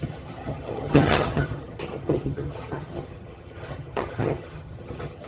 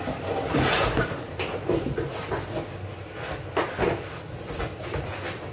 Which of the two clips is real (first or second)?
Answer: second